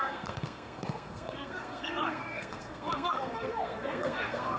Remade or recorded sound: remade